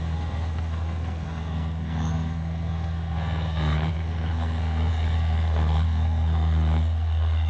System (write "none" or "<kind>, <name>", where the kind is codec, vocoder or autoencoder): codec, SNAC